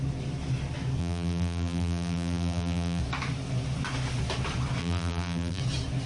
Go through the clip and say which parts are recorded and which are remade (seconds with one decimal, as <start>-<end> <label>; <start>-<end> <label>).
0.0-1.0 recorded; 1.0-3.0 remade; 3.0-4.8 recorded; 4.8-5.6 remade; 5.6-6.1 recorded